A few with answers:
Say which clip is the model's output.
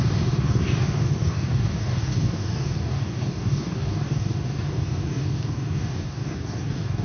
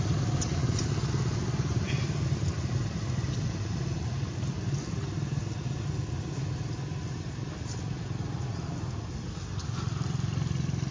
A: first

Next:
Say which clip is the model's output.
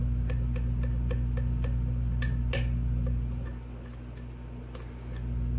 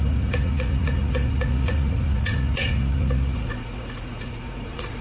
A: second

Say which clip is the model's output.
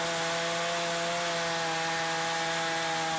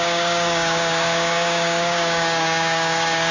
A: second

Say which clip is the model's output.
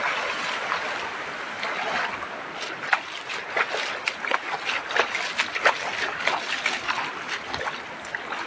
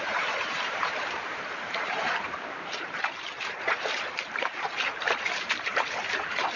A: second